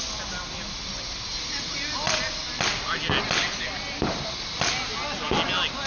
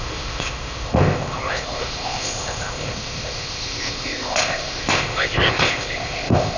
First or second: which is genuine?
first